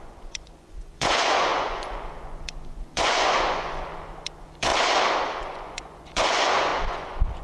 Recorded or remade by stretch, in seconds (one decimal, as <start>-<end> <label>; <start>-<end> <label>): 0.0-4.7 remade; 4.7-5.4 recorded; 5.4-7.4 remade